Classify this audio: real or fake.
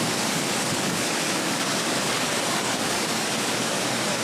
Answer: fake